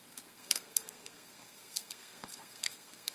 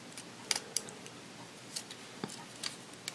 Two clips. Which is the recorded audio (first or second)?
second